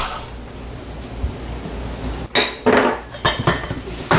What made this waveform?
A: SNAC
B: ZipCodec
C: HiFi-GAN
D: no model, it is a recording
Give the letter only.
D